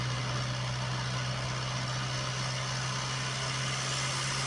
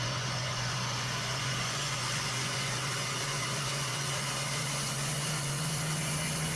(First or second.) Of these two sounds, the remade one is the second